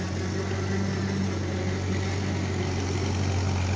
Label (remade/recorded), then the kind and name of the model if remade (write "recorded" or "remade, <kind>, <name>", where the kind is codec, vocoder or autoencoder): recorded